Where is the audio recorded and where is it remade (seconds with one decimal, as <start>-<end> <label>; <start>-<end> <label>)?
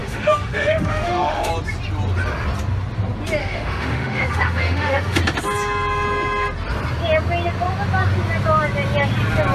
0.0-1.5 remade; 1.5-3.4 recorded; 3.4-5.2 remade; 5.2-9.5 recorded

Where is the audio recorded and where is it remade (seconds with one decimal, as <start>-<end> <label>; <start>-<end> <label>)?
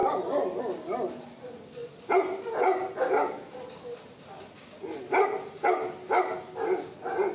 0.0-7.3 recorded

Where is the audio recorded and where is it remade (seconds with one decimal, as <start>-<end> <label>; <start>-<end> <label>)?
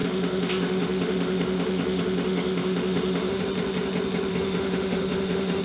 0.0-3.4 remade; 3.4-4.3 recorded; 4.3-5.6 remade